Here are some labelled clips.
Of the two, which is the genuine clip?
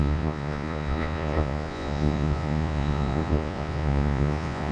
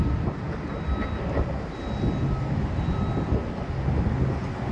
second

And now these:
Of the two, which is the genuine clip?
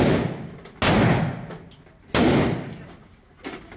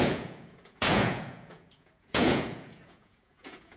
first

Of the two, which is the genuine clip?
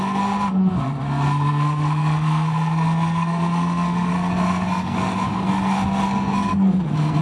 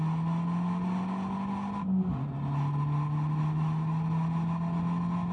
second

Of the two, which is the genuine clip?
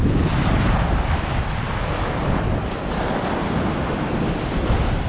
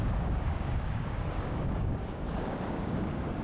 first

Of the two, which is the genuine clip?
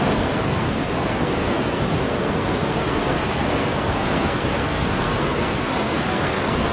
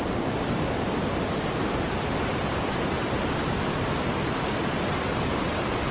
second